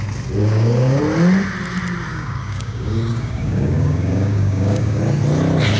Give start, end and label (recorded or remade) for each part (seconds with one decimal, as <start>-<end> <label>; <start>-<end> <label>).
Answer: 0.0-0.4 recorded; 0.4-1.0 remade; 1.0-2.1 recorded; 2.1-5.0 remade; 5.0-5.8 recorded